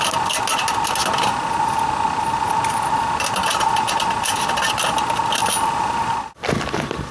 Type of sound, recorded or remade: recorded